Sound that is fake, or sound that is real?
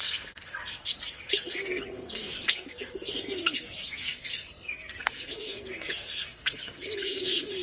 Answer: fake